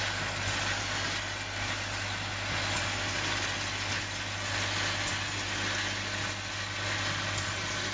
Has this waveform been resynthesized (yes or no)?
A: no